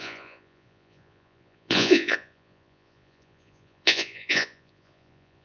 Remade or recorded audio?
remade